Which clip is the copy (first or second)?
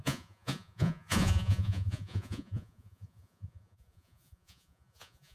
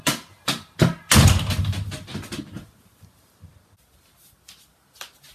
first